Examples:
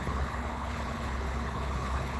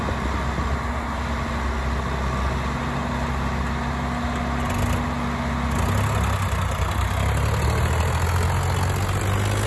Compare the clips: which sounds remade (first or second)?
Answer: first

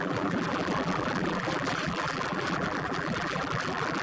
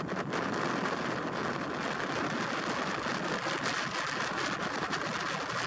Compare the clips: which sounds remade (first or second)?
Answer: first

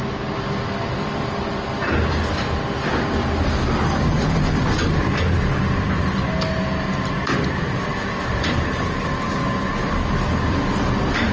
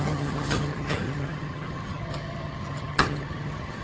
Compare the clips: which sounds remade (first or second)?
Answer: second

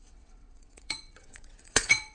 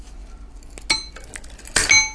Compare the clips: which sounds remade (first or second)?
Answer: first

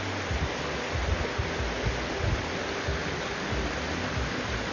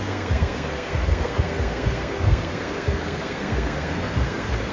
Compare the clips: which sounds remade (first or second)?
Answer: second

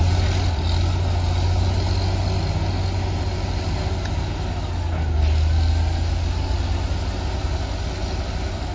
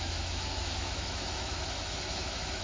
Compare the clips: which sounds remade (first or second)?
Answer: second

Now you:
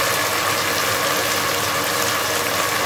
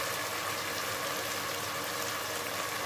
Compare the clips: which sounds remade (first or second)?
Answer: second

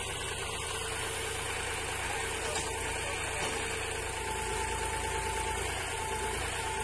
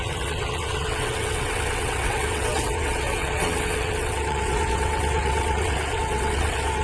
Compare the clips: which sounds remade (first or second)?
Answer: second